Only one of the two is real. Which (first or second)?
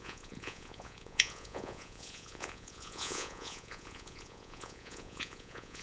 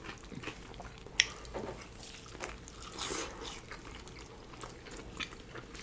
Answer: second